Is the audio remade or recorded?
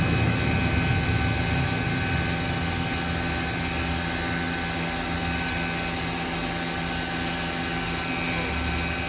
recorded